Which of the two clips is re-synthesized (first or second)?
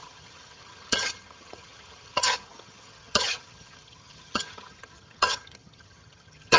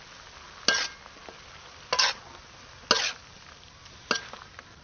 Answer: first